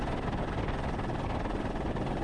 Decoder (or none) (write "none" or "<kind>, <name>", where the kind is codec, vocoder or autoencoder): none